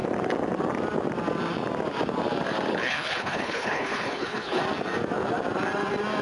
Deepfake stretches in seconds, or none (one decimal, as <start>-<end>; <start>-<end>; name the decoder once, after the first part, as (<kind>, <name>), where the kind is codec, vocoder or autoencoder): 2.7-4.6 (codec, HILCodec)